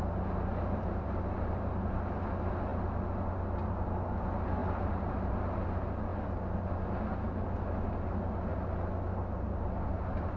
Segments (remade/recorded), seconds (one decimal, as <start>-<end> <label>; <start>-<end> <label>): 0.0-4.6 recorded; 4.6-5.3 remade; 5.3-10.4 recorded